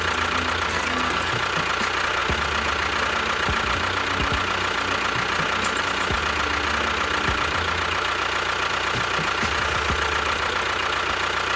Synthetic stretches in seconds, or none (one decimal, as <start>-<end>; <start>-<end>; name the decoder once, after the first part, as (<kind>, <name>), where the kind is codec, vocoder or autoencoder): 0.7-1.3 (codec, SNAC)